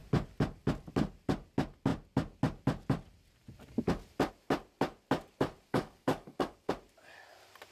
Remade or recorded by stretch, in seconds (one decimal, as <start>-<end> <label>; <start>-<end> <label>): 0.0-5.7 recorded; 5.7-6.7 remade; 6.7-7.7 recorded